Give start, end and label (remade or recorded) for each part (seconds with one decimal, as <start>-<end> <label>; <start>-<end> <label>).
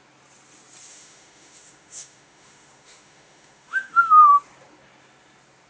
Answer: 0.0-0.9 recorded; 0.9-4.3 remade; 4.3-5.7 recorded